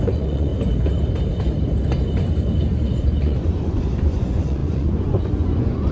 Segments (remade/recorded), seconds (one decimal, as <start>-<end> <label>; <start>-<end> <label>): 0.0-0.5 remade; 0.5-3.0 recorded; 3.0-5.9 remade